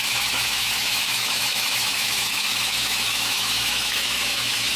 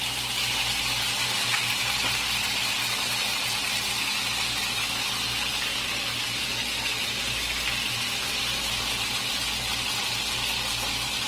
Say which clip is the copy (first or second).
first